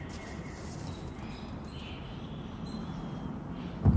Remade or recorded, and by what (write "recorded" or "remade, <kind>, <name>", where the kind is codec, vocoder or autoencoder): recorded